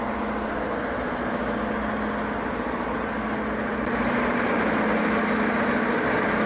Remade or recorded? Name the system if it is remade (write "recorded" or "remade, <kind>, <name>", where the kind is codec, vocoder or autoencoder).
recorded